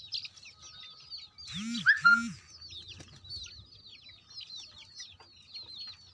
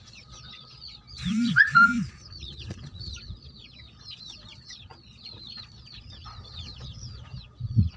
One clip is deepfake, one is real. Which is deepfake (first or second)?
second